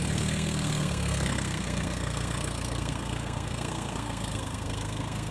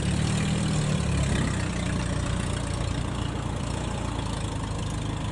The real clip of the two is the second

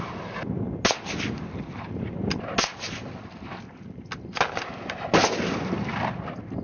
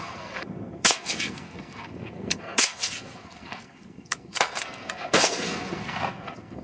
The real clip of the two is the first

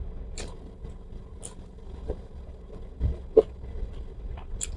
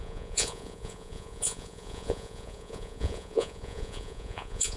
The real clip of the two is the first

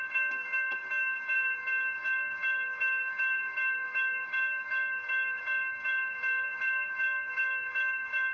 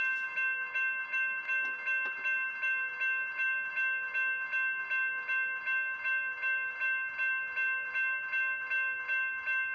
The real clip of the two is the second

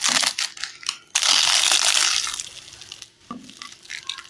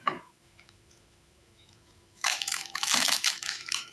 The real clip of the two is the first